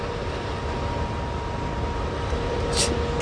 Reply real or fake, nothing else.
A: real